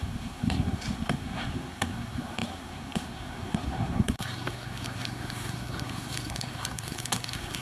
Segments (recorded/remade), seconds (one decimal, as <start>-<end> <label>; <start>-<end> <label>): 0.0-7.6 remade